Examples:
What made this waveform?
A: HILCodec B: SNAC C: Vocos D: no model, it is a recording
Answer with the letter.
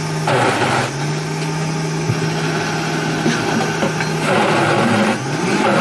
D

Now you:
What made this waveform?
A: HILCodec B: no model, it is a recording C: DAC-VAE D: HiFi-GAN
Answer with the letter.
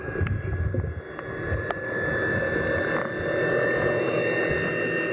B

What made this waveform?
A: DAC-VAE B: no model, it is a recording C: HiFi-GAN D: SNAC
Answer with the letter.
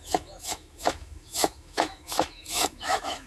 A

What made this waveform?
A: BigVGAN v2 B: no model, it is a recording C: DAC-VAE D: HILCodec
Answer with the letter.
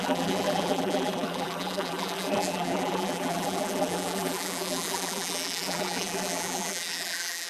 A